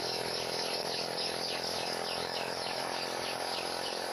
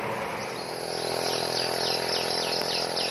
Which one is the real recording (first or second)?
second